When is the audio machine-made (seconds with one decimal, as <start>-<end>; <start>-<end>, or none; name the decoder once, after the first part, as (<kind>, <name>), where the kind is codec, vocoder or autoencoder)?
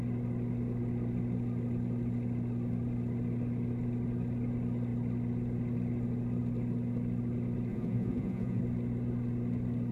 7.7-8.6 (vocoder, Vocos)